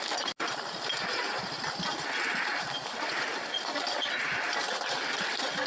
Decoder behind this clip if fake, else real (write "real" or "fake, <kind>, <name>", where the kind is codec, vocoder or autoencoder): real